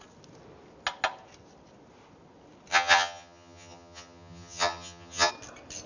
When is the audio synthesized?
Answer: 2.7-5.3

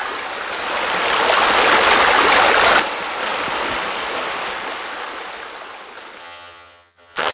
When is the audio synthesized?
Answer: 6.2-7.3